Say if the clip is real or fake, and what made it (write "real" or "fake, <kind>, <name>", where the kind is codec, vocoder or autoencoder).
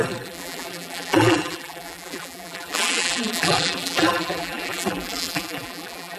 fake, vocoder, BigVGAN v2